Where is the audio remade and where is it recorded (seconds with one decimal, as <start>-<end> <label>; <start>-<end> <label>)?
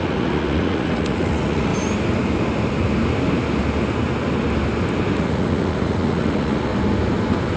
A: 0.0-1.7 remade; 1.7-5.2 recorded; 5.2-6.7 remade; 6.7-7.6 recorded